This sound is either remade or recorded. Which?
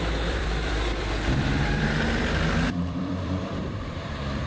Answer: remade